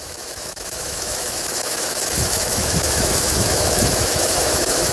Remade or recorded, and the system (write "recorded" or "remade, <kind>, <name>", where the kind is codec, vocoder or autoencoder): remade, autoencoder, DAC-VAE